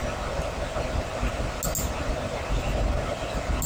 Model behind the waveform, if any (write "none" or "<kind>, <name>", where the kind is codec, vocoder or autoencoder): none